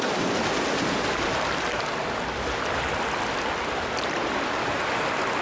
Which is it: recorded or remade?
recorded